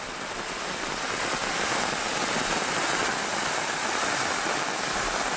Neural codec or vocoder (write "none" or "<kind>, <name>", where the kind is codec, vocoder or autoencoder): none